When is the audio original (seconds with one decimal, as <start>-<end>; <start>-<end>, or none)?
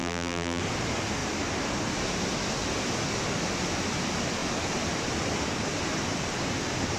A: 0.6-7.0